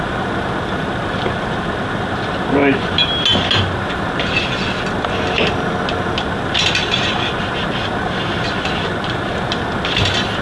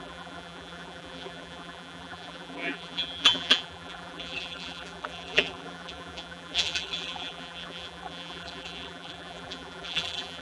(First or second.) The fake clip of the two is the second